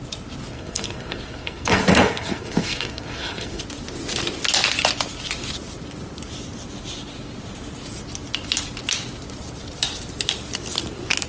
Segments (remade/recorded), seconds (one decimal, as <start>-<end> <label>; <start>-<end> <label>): 0.0-0.5 recorded; 0.5-3.6 remade; 3.6-11.3 recorded